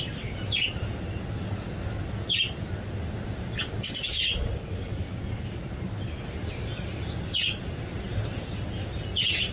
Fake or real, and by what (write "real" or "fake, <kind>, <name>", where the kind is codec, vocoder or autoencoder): real